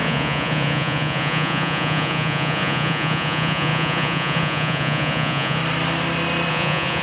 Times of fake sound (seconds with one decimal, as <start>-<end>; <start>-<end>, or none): 0.0-5.6; 6.5-7.0